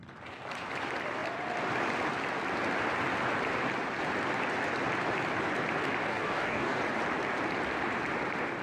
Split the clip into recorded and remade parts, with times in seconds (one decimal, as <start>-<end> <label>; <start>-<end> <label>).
0.0-6.1 recorded; 6.1-6.8 remade; 6.8-8.6 recorded